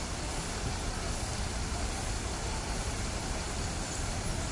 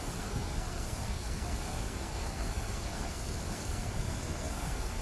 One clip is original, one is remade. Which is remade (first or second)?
second